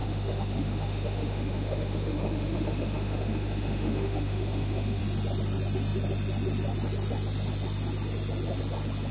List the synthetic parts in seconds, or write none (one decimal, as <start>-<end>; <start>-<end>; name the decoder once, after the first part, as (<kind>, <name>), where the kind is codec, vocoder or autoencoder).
0.0-5.0 (autoencoder, DAC-VAE)